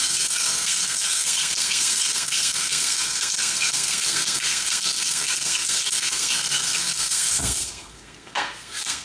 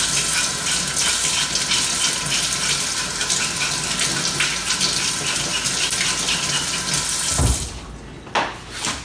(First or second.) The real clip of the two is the second